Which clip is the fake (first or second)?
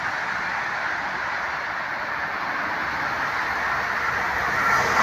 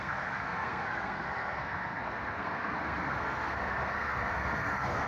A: second